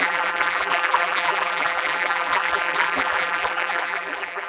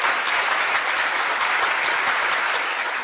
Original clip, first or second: second